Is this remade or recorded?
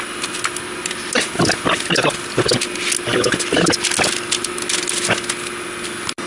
recorded